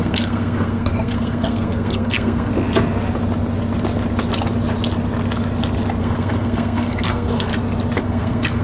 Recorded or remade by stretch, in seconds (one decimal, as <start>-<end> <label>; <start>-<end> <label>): 0.0-2.5 remade; 2.5-6.0 recorded; 6.0-7.5 remade; 7.5-8.0 recorded; 8.0-8.6 remade